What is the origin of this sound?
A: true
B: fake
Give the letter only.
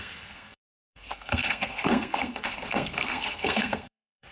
B